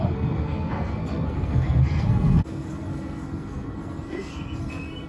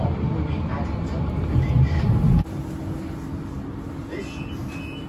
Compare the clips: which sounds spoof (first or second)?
first